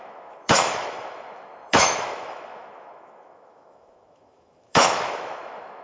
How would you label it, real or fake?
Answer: fake